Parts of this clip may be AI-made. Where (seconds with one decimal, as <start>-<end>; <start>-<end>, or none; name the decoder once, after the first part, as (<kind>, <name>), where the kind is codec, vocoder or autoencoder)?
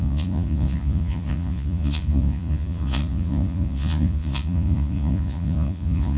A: 0.0-6.2 (vocoder, Vocos)